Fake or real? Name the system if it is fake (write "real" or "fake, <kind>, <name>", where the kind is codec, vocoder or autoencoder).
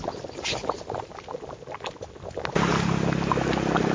real